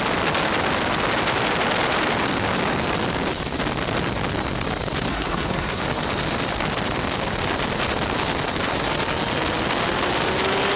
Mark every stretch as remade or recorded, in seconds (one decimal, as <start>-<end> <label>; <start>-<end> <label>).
0.0-5.1 recorded; 5.1-5.8 remade; 5.8-10.8 recorded